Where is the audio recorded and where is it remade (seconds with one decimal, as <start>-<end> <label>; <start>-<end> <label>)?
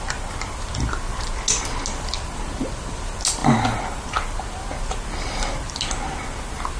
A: 0.0-6.8 recorded